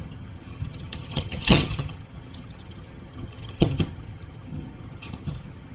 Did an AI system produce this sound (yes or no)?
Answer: yes